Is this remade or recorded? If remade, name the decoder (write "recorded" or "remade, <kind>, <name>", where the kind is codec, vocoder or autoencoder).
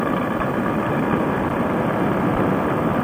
remade, vocoder, BigVGAN v2